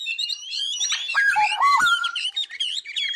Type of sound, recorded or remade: remade